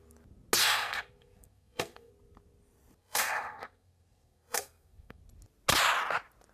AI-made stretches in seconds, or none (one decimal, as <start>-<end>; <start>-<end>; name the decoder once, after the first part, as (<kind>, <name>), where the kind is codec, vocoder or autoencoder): 0.6-2.1 (codec, SNAC); 3.0-5.2